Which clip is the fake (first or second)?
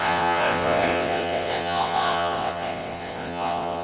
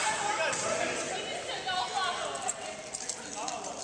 first